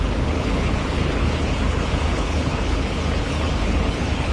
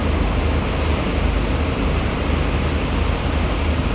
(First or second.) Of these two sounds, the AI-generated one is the first